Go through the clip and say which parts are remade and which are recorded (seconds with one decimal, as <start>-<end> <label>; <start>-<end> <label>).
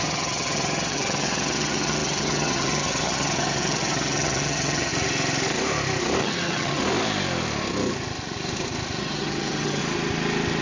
0.0-4.9 remade; 4.9-6.2 recorded; 6.2-6.8 remade; 6.8-9.0 recorded; 9.0-9.8 remade; 9.8-10.6 recorded